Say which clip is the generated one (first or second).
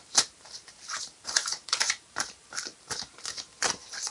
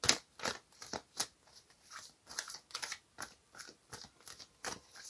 first